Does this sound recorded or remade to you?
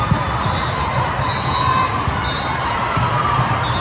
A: recorded